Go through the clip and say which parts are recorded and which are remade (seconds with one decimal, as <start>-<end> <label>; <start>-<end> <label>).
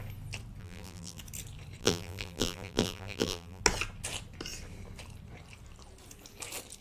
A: 0.0-0.6 recorded; 0.6-1.2 remade; 1.2-1.8 recorded; 1.8-3.6 remade; 3.6-6.8 recorded